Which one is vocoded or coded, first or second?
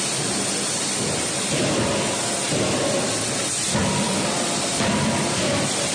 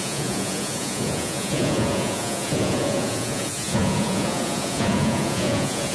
second